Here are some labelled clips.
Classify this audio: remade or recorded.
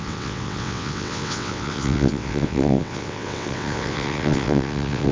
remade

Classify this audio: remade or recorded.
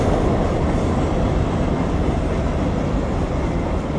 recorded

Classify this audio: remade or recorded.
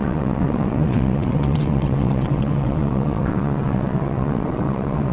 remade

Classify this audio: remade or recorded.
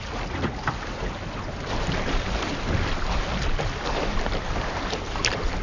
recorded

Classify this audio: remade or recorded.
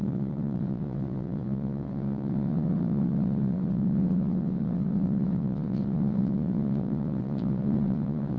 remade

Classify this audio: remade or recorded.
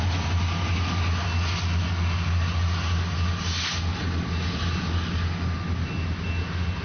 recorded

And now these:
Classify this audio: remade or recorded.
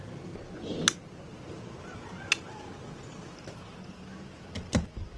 recorded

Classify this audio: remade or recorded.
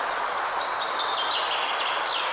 recorded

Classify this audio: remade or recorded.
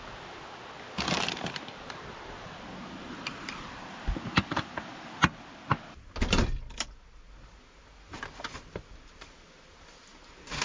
recorded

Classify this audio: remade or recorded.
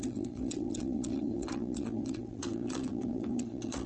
remade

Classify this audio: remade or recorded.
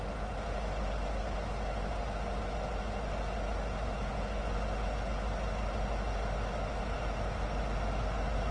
recorded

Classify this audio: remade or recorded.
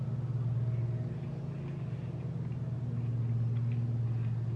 recorded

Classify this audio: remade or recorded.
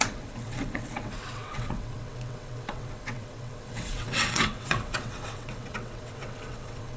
remade